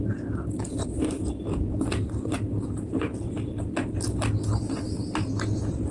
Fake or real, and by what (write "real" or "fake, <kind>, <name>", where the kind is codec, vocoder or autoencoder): real